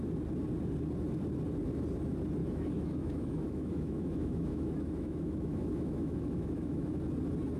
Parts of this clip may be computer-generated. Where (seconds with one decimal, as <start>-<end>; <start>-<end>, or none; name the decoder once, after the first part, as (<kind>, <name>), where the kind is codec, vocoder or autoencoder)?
2.4-7.0 (autoencoder, DAC-VAE)